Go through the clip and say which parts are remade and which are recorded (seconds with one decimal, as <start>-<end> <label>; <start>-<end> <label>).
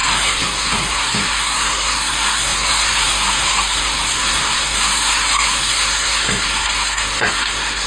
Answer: 0.0-7.9 remade